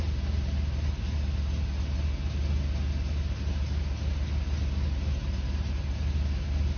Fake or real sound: real